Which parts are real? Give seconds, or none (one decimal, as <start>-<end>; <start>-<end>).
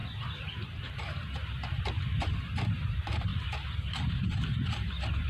3.3-4.1